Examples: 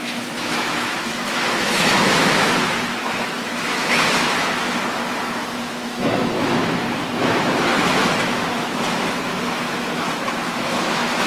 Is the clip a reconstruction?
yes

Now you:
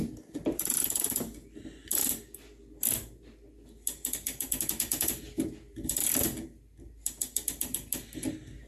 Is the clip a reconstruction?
no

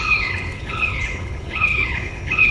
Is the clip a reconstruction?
yes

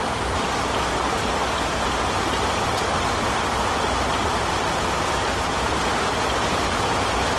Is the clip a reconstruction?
no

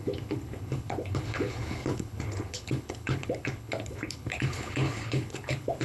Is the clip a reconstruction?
yes